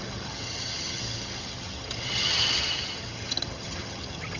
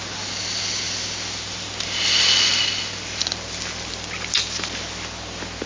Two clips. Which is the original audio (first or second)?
second